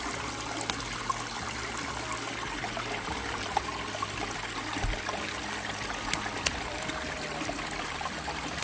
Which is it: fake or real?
real